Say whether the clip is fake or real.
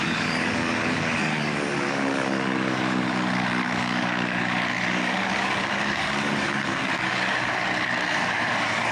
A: fake